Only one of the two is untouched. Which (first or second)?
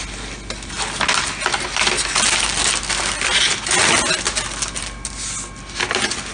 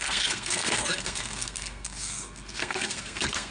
first